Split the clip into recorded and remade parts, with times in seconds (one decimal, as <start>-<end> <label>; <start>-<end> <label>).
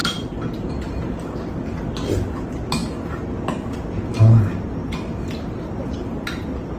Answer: 0.0-0.7 remade; 0.7-6.8 recorded